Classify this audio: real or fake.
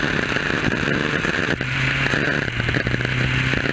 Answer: real